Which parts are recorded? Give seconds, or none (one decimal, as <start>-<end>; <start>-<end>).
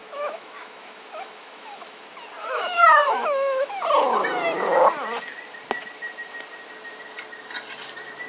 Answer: 2.0-2.4; 3.7-8.3